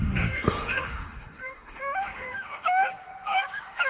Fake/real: fake